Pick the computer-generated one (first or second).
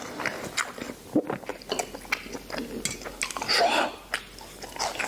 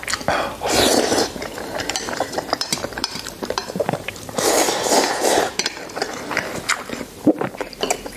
second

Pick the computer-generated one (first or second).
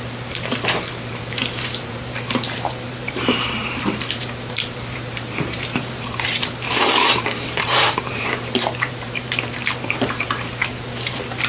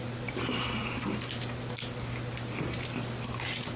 first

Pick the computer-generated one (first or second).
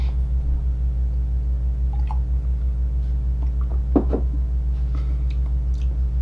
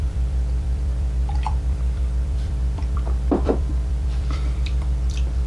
second